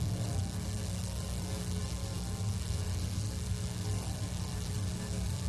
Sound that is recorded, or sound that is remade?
remade